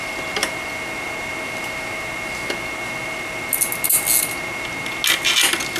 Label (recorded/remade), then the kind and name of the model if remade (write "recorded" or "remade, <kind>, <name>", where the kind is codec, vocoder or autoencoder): recorded